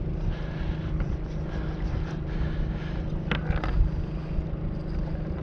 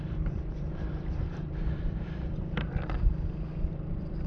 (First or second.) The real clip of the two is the first